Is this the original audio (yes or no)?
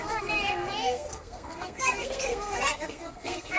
no